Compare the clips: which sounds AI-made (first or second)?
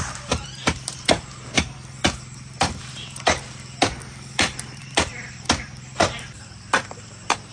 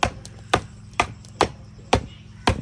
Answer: first